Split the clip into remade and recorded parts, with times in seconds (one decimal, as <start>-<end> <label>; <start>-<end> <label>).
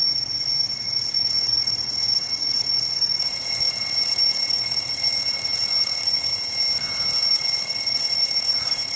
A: 0.0-6.3 remade; 6.3-7.2 recorded; 7.2-9.0 remade